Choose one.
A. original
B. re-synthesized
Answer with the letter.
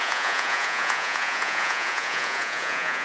B